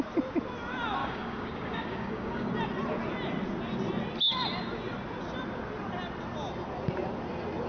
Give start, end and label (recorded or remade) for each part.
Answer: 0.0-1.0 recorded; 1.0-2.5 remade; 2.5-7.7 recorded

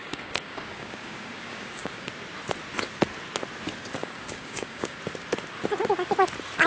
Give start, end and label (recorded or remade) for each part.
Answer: 0.0-2.1 remade; 2.1-4.0 recorded; 4.0-5.0 remade; 5.0-6.7 recorded

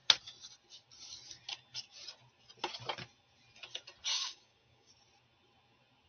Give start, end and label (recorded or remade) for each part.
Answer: 0.0-4.1 recorded; 4.1-4.9 remade; 4.9-6.1 recorded

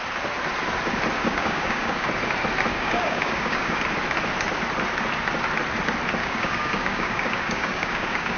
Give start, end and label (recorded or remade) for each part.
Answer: 0.0-1.2 recorded; 1.2-2.1 remade; 2.1-2.7 recorded; 2.7-3.8 remade; 3.8-6.2 recorded; 6.2-8.4 remade

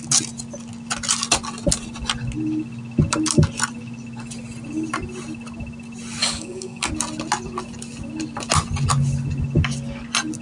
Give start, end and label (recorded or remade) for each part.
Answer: 0.0-6.2 recorded; 6.2-6.9 remade; 6.9-10.4 recorded

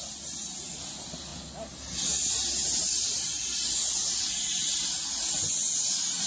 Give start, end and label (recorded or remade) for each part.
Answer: 0.0-6.3 recorded

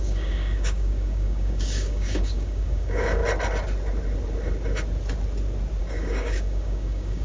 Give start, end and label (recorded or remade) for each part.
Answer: 0.0-3.2 remade; 3.2-5.8 recorded; 5.8-7.2 remade

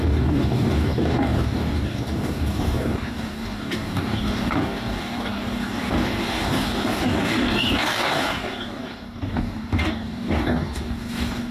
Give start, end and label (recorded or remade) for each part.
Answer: 0.0-11.5 remade